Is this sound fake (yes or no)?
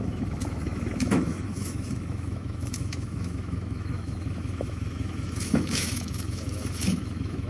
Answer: yes